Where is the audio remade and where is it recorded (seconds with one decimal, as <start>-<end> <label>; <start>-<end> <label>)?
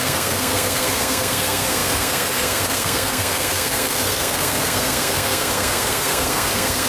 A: 0.0-6.9 remade